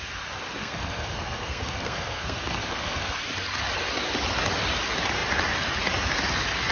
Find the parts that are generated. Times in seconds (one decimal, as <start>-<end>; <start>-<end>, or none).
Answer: 0.6-3.1